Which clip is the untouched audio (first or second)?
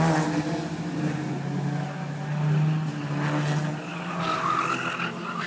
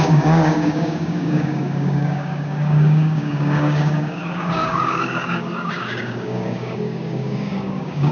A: first